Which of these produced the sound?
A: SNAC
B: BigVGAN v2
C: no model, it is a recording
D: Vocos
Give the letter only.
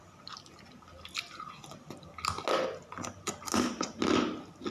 C